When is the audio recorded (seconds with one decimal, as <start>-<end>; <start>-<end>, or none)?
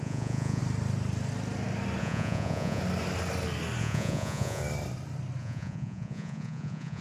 0.6-2.0; 2.8-3.8; 4.6-5.4